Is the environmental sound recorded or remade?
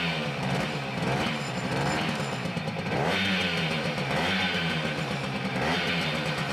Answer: remade